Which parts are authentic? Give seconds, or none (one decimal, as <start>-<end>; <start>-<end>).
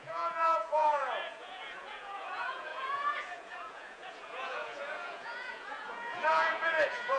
none